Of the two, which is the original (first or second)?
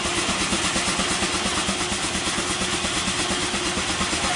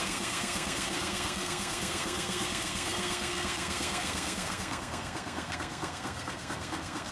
first